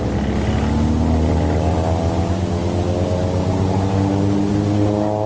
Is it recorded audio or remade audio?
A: recorded